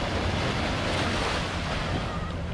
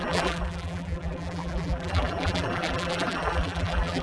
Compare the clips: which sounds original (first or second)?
first